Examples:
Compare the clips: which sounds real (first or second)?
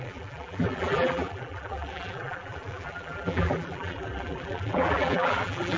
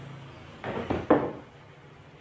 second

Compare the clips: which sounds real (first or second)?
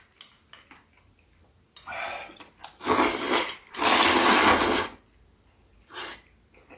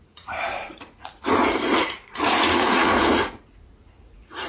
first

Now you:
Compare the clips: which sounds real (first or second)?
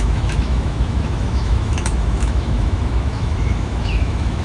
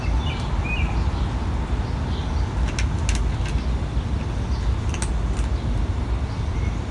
second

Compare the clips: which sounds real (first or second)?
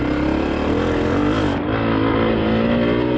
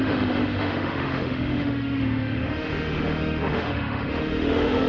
first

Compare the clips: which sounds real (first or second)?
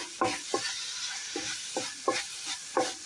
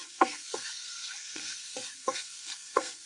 first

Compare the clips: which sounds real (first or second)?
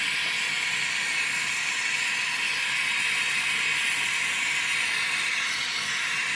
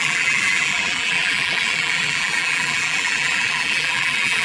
first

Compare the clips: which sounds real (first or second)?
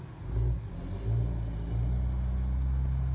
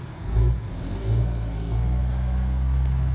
first